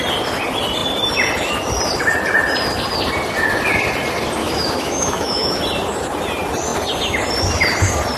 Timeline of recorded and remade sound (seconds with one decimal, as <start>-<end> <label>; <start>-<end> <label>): 0.0-4.4 recorded; 4.4-5.6 remade; 5.6-8.2 recorded